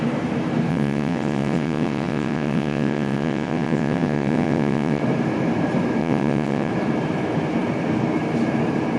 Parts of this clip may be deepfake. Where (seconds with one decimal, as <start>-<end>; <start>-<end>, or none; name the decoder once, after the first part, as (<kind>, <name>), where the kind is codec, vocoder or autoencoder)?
0.7-5.0 (vocoder, WaveNeXt); 6.0-6.7